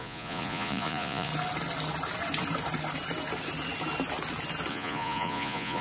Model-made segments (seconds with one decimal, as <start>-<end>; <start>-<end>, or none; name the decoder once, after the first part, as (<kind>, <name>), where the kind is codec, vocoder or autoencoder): 0.0-1.3 (vocoder, Vocos); 4.7-5.8